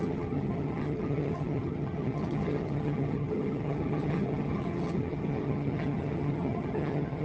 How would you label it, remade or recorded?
remade